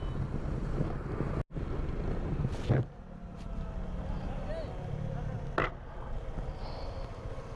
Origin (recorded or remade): recorded